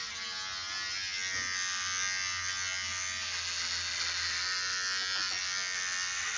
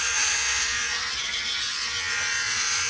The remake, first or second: second